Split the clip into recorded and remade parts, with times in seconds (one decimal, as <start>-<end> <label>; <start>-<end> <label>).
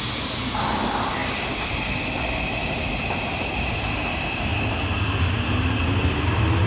0.0-6.7 recorded